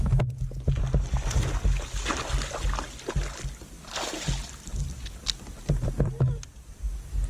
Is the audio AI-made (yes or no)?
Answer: no